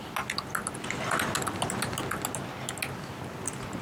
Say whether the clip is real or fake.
real